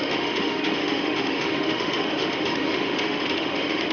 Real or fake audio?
fake